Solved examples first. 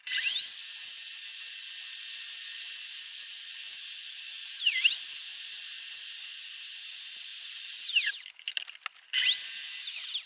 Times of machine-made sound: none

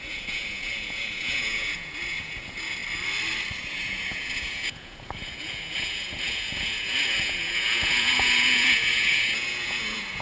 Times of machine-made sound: 0.0-2.8 (vocoder, Vocos); 3.6-10.2

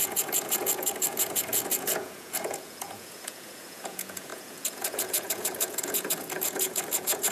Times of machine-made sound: 0.0-7.3 (vocoder, Vocos)

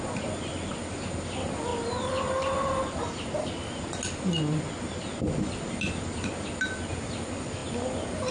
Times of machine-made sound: none

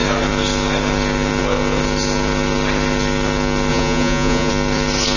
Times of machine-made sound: 3.7-4.5 (vocoder, Vocos)